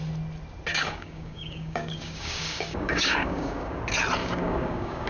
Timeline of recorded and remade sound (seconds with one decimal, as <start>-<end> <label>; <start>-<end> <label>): 0.0-0.7 recorded; 0.7-3.8 remade; 3.8-4.2 recorded; 4.2-5.1 remade